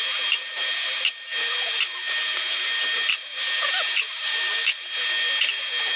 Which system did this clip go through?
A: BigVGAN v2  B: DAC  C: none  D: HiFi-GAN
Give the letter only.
A